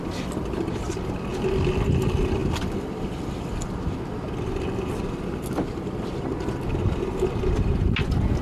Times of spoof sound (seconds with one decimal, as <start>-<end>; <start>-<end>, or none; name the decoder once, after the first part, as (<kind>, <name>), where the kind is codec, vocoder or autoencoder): none